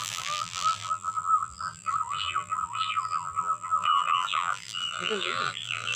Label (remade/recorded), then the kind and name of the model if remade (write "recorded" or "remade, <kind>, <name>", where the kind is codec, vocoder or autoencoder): remade, vocoder, BigVGAN v2